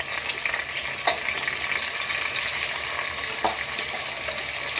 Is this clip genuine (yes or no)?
yes